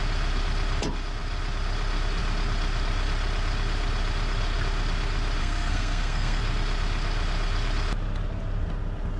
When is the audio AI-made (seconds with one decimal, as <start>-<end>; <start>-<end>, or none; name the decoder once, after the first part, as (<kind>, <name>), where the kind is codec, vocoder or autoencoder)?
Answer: 5.4-6.4 (codec, SNAC)